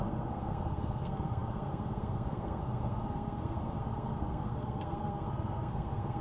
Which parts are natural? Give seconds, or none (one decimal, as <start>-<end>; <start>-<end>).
none